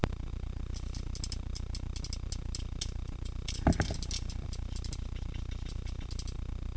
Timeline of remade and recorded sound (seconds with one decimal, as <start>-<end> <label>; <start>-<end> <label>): 0.0-6.8 recorded